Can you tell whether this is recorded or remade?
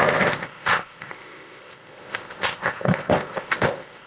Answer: remade